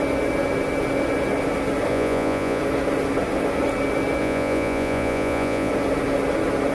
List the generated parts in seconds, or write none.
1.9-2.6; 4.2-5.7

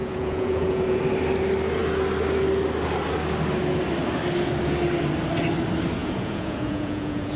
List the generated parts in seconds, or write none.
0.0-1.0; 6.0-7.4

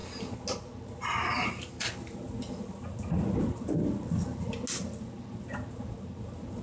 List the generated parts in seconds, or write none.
none

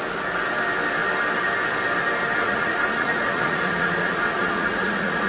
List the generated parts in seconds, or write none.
2.4-5.3